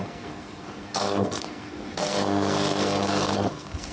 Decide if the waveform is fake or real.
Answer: fake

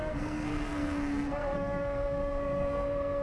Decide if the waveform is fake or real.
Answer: fake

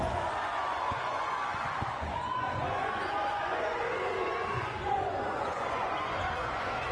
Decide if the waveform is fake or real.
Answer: fake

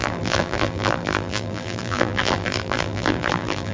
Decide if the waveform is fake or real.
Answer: fake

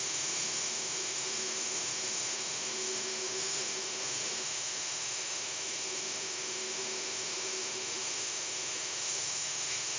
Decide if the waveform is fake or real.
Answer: fake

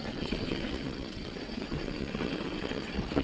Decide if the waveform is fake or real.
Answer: fake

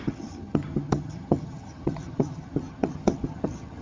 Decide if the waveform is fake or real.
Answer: fake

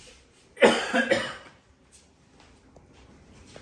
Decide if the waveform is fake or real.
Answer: real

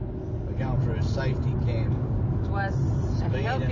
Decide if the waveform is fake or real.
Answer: real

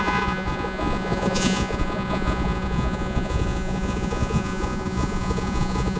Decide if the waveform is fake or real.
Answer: fake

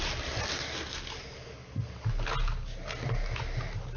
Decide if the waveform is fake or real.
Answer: real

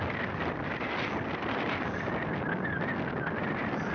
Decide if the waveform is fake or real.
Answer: real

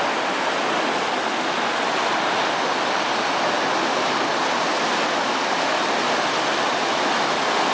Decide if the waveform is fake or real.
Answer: real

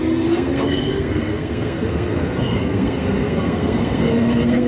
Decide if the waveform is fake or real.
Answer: fake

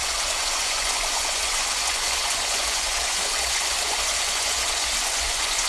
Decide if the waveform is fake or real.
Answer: fake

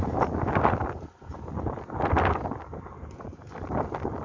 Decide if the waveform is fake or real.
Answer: real